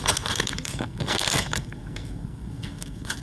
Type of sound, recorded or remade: remade